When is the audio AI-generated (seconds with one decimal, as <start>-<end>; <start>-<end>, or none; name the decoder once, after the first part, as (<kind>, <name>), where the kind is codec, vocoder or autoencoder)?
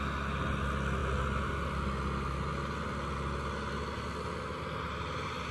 none